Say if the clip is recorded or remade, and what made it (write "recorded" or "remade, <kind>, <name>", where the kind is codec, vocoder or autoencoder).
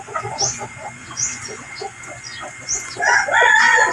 remade, vocoder, Vocos